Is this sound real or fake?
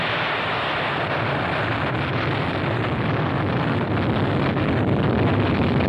fake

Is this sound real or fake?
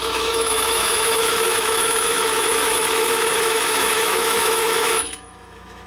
fake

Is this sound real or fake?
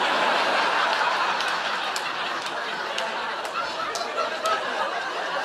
real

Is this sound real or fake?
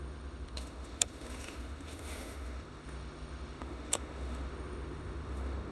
fake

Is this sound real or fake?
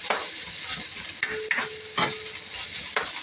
real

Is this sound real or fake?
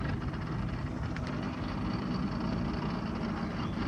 real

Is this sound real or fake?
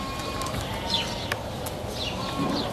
real